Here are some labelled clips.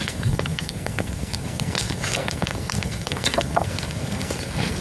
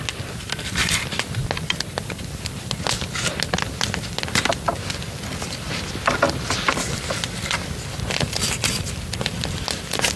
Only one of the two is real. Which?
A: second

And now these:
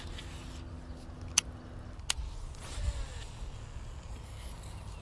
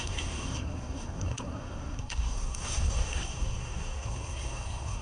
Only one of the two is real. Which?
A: first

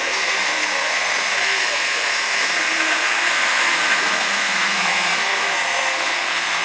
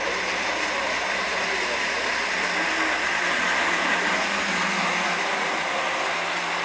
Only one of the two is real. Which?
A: second